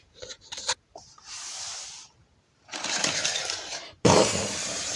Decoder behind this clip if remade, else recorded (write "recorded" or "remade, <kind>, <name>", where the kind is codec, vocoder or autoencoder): remade, vocoder, BigVGAN v2